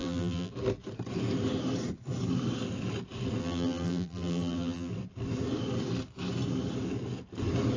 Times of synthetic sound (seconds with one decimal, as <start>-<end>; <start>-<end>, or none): 0.0-0.5; 3.4-4.9